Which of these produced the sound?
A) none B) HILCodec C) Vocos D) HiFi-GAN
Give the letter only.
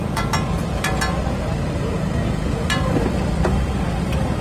A